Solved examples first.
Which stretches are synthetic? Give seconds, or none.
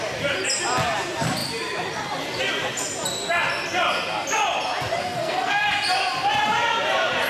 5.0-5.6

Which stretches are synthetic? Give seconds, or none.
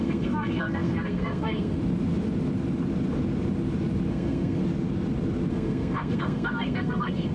0.0-1.8; 4.1-4.6; 5.5-7.3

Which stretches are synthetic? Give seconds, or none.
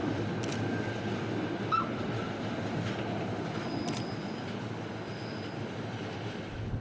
none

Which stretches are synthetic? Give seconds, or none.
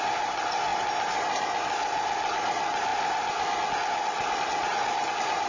none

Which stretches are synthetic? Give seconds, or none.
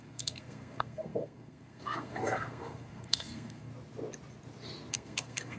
0.0-3.7; 4.9-5.6